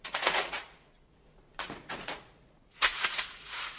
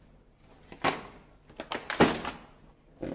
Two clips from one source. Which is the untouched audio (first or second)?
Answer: second